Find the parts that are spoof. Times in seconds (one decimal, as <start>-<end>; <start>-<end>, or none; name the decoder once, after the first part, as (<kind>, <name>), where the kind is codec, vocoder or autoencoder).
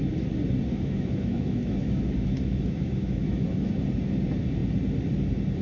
0.7-3.7 (autoencoder, DAC-VAE)